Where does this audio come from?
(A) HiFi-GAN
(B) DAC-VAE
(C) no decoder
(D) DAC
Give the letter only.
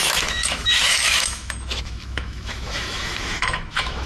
B